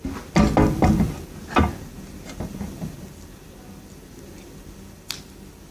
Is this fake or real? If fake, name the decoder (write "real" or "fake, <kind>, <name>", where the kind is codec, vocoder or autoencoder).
real